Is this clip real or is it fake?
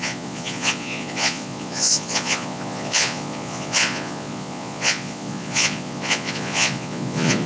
fake